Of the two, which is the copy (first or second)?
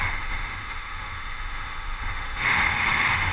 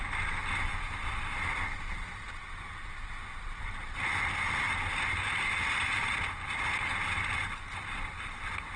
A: first